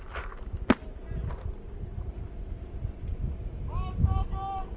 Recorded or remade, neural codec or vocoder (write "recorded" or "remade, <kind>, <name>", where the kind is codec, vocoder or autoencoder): recorded